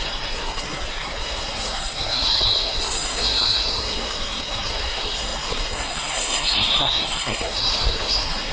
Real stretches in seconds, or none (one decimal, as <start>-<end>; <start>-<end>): none